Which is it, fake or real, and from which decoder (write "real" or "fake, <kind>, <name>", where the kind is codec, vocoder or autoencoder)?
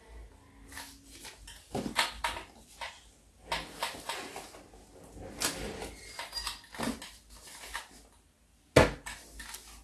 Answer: real